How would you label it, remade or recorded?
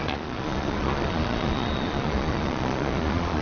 remade